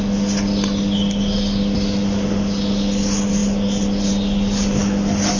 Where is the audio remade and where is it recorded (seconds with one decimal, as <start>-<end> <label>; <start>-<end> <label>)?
0.0-5.4 recorded